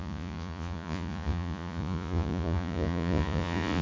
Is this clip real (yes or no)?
no